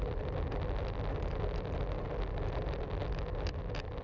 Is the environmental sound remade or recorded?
recorded